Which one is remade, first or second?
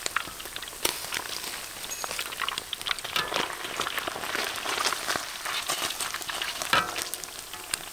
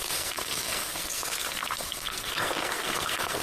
second